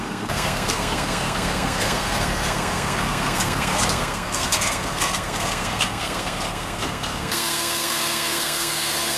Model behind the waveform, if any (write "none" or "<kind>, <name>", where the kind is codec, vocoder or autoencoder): codec, SNAC